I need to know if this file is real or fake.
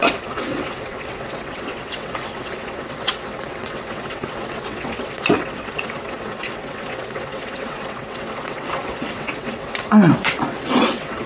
fake